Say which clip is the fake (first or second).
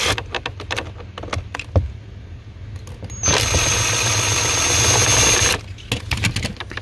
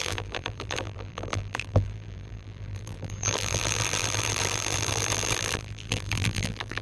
second